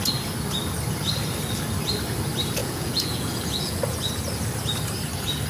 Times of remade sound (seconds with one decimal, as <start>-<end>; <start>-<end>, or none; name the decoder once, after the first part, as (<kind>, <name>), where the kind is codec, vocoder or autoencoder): 2.6-3.8 (vocoder, Vocos)